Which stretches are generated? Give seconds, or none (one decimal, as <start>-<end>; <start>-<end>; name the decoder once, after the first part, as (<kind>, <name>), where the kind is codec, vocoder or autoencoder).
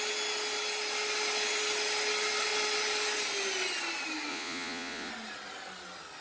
4.3-5.1 (vocoder, Vocos)